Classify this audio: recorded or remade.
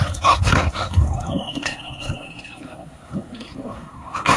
remade